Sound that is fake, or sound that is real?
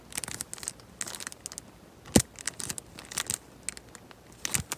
real